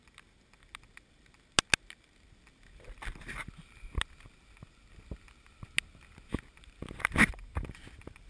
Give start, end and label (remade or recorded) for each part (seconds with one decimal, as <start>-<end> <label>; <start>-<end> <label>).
0.0-6.8 recorded; 6.8-8.3 remade